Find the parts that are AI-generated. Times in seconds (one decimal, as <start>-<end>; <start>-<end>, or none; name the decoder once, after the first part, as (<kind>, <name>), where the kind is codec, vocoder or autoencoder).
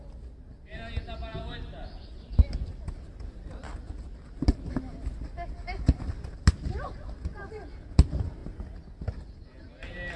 none